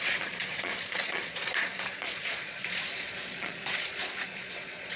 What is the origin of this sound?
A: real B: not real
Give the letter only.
B